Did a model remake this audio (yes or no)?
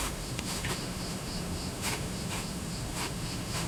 yes